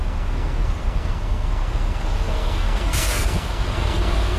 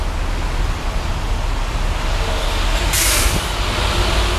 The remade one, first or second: first